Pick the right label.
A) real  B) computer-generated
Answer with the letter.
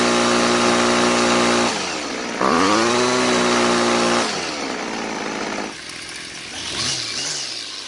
A